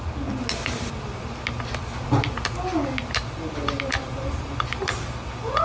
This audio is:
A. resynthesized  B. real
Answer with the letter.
B